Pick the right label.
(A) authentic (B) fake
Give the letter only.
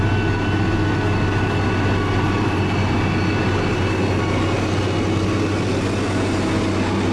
A